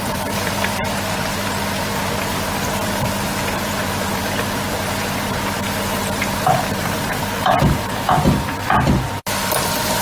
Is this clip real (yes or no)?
no